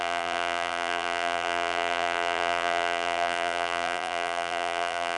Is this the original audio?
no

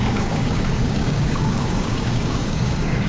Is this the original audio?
no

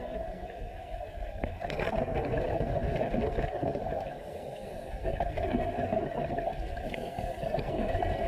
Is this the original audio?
no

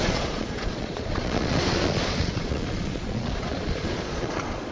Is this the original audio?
no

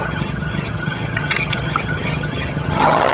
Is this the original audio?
no